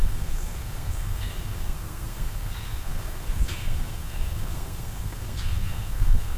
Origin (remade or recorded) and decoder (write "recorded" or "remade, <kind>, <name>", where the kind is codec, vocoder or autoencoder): remade, codec, SNAC